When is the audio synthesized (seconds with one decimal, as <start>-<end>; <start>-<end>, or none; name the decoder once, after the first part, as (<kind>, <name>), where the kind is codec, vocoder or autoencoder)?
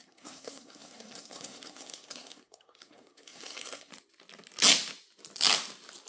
0.0-3.9 (codec, SNAC)